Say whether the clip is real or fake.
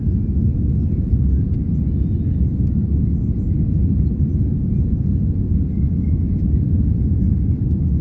real